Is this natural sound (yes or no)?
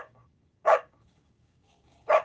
no